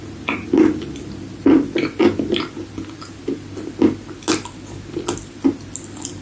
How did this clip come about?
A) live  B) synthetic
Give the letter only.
A